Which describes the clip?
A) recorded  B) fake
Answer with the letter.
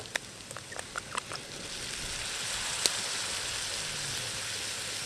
A